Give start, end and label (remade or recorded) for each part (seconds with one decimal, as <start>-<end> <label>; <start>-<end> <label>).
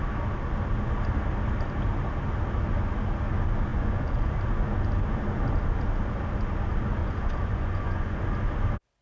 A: 0.0-3.7 recorded; 3.7-4.3 remade; 4.3-7.0 recorded; 7.0-8.2 remade; 8.2-9.0 recorded